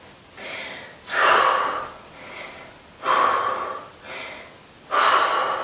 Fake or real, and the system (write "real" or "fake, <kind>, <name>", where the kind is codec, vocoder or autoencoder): real